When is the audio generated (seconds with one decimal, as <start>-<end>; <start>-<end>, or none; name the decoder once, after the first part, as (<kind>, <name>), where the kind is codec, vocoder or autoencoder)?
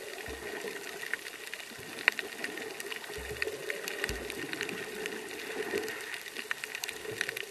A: none